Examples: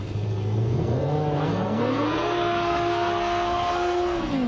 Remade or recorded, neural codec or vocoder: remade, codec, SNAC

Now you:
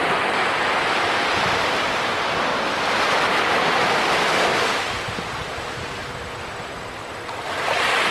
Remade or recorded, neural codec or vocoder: recorded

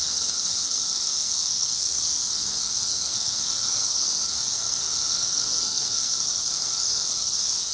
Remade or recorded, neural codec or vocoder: remade, codec, SNAC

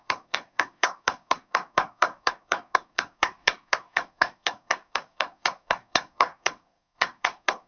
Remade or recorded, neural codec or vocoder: remade, codec, SNAC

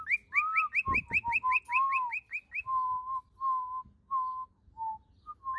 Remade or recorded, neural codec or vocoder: recorded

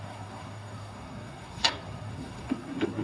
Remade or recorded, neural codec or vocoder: remade, codec, SNAC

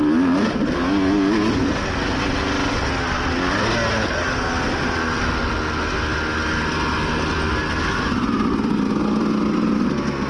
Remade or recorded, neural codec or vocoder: recorded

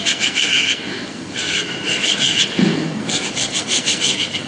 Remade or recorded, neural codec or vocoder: remade, codec, SNAC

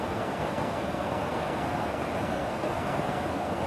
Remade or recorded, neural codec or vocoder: remade, codec, SNAC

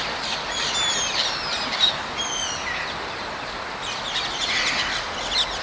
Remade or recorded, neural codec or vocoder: recorded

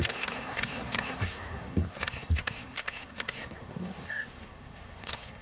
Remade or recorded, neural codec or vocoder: remade, codec, SNAC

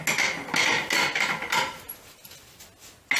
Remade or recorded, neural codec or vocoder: recorded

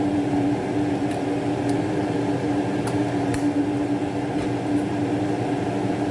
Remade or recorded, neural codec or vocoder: recorded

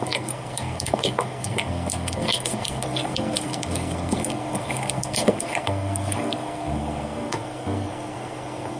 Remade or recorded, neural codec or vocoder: remade, codec, SNAC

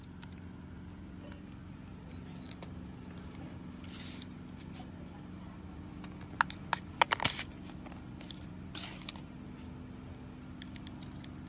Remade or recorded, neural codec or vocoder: recorded